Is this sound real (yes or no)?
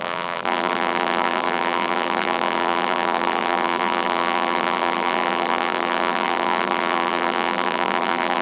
no